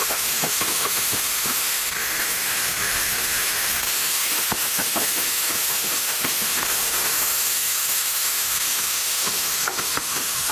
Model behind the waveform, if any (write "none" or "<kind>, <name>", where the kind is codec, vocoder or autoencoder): autoencoder, DAC-VAE